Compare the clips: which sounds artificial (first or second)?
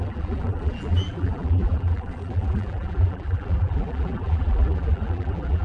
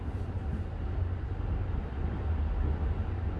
first